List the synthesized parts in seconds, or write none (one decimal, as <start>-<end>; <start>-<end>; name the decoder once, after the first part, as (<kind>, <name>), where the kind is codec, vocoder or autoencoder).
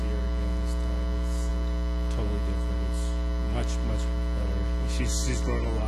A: none